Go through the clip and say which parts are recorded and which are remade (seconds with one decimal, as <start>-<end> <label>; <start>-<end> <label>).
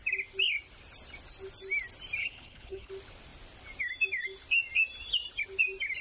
0.0-2.2 recorded; 2.2-2.9 remade; 2.9-6.0 recorded